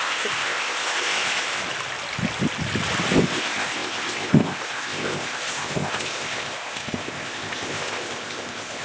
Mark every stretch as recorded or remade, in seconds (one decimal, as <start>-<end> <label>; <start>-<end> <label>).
0.0-1.6 remade; 1.6-3.1 recorded; 3.1-8.8 remade

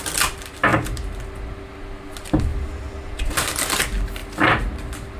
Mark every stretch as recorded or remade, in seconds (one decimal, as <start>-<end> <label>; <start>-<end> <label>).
0.0-0.7 recorded; 0.7-1.2 remade; 1.2-2.5 recorded; 2.5-3.8 remade; 3.8-5.2 recorded